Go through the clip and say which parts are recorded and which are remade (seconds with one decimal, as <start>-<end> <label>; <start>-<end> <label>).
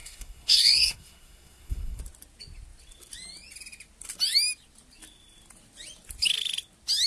0.0-2.0 remade; 2.0-7.1 recorded